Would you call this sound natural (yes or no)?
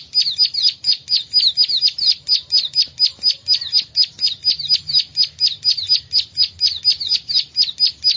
yes